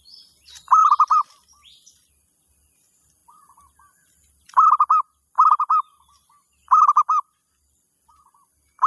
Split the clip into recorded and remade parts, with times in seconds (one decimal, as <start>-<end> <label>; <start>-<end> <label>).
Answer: 0.0-3.2 remade; 3.2-8.1 recorded; 8.1-8.9 remade